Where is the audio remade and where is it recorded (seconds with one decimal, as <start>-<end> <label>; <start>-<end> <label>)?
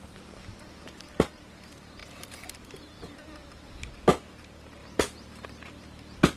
0.0-2.0 recorded; 2.0-3.8 remade; 3.8-4.8 recorded; 4.8-5.8 remade; 5.8-6.4 recorded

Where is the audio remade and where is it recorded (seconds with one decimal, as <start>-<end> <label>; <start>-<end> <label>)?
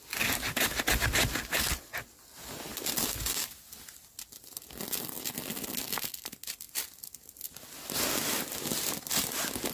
0.0-9.7 recorded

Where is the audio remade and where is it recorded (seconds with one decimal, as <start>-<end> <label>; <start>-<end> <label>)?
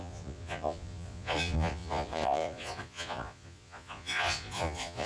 0.0-5.1 remade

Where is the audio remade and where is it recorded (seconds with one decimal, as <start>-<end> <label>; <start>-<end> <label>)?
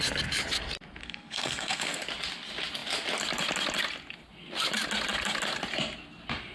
0.0-1.0 recorded; 1.0-2.0 remade; 2.0-6.5 recorded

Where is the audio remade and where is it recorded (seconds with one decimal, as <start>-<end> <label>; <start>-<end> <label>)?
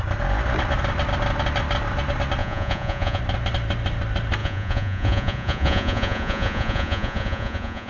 0.0-2.4 recorded; 2.4-3.2 remade; 3.2-4.4 recorded; 4.4-7.9 remade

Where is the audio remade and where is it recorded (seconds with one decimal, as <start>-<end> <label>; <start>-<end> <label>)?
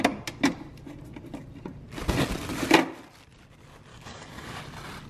0.0-3.9 recorded; 3.9-4.6 remade; 4.6-5.1 recorded